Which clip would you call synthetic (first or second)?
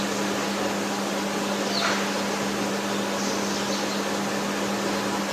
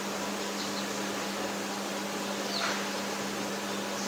second